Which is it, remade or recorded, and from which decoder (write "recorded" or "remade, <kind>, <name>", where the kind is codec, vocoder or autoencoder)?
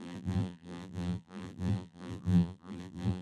remade, vocoder, BigVGAN v2